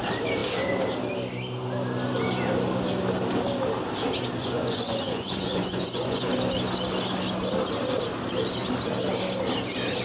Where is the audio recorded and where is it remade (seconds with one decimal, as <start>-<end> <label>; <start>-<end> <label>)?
0.0-4.4 recorded; 4.4-6.3 remade; 6.3-10.0 recorded